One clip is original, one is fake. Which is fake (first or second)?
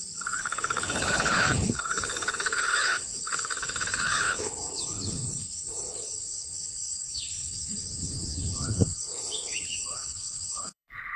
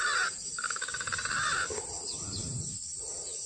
first